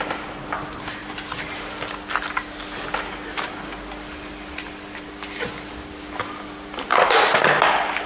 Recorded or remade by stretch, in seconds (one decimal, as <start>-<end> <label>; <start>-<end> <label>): 0.0-8.1 recorded